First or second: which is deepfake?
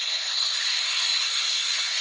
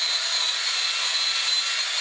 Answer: first